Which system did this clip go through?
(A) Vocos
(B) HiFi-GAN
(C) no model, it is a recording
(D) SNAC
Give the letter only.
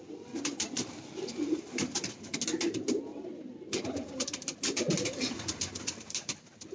C